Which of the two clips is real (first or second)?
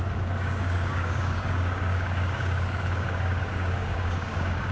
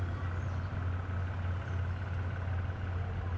second